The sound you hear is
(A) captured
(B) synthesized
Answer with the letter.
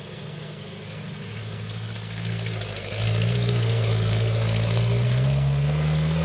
B